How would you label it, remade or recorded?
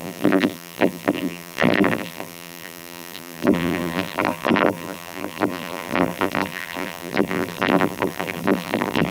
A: remade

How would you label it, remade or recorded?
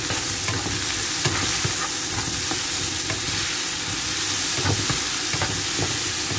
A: recorded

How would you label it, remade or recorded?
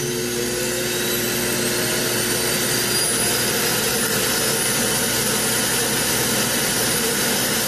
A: recorded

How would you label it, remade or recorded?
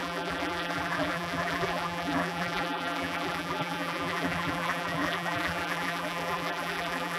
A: remade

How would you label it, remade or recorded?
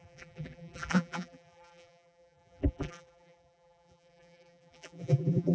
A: remade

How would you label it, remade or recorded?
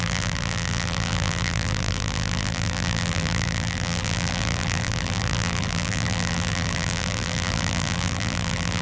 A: remade